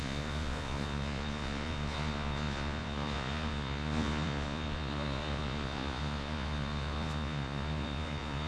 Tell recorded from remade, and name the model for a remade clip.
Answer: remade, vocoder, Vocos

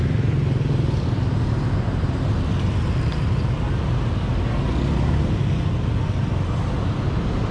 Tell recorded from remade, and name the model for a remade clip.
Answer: recorded